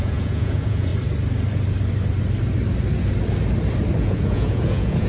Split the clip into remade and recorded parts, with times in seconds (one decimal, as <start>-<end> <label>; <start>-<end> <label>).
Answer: 0.0-0.9 remade; 0.9-4.0 recorded; 4.0-5.1 remade